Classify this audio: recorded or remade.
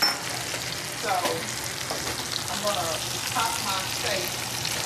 recorded